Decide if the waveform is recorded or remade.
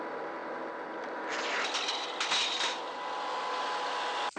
recorded